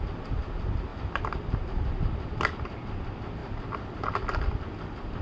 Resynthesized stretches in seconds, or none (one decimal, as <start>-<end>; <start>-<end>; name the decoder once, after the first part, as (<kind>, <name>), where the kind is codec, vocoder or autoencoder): none